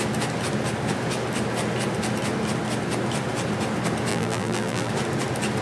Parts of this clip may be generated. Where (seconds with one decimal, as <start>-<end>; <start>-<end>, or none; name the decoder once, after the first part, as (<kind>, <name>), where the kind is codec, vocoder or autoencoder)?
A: 4.1-4.9 (vocoder, BigVGAN v2)